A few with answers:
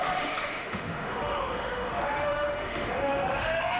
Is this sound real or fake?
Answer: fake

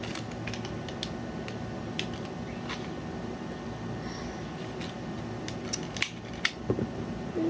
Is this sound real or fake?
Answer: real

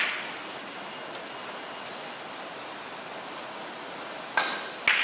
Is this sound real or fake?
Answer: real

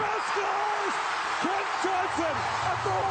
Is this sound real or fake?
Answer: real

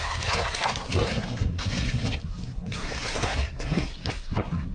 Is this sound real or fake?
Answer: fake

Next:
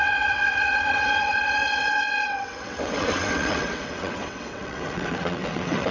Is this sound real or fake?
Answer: fake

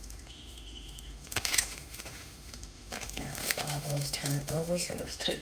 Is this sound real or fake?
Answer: fake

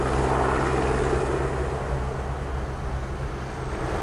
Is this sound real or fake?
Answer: real